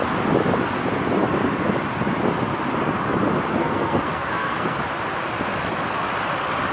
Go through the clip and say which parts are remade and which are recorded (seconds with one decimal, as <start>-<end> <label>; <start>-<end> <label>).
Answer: 0.0-3.6 recorded; 3.6-4.8 remade; 4.8-6.7 recorded